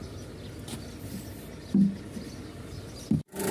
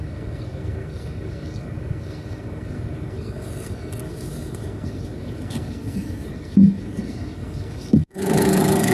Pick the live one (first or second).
first